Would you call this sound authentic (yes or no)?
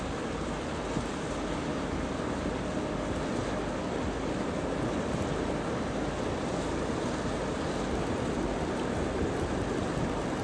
yes